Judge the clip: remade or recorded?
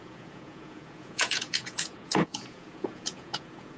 remade